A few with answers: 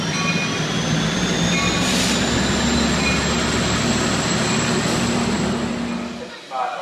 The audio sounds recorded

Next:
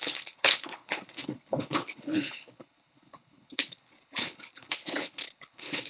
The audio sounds remade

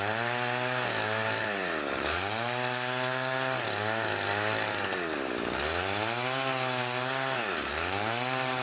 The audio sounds recorded